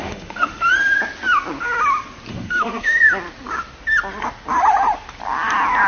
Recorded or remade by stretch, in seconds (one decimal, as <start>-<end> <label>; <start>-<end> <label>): 0.0-0.7 remade; 0.7-2.3 recorded; 2.3-3.0 remade; 3.0-5.9 recorded